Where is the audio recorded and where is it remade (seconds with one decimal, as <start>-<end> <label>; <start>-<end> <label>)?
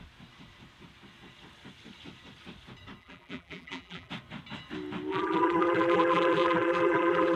0.0-3.0 recorded; 3.0-4.1 remade; 4.1-5.1 recorded; 5.1-7.4 remade